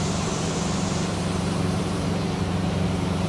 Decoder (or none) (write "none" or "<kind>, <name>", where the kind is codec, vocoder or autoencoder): vocoder, BigVGAN v2